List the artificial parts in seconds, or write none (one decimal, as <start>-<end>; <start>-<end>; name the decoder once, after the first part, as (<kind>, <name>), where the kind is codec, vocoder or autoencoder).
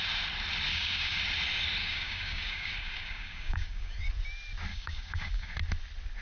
0.7-1.2 (codec, DAC); 1.8-4.1; 4.7-5.5